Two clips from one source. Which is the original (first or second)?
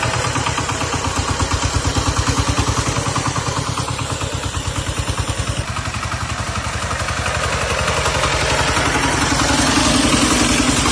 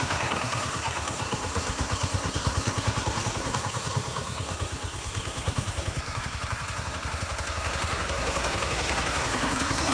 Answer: first